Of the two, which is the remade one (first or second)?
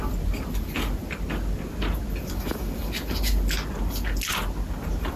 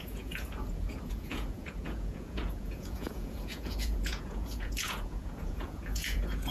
second